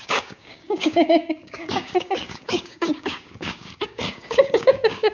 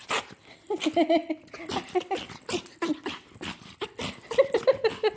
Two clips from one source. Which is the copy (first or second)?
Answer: first